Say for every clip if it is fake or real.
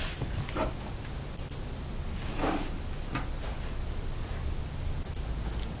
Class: real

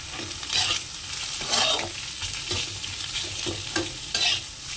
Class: real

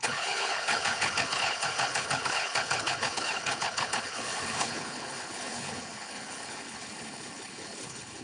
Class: fake